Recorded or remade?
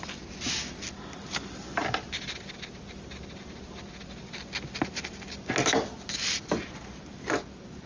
recorded